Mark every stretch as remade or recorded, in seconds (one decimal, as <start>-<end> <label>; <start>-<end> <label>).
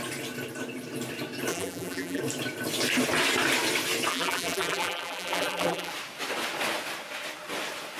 0.0-1.5 recorded; 1.5-2.2 remade; 2.2-4.1 recorded; 4.1-5.9 remade; 5.9-8.0 recorded